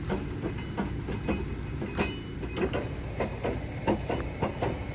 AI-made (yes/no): no